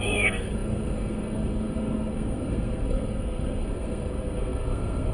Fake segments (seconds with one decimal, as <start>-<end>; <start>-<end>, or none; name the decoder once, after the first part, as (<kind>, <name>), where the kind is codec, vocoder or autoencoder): 0.0-5.1 (codec, SNAC)